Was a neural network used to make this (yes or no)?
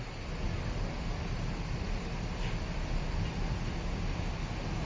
no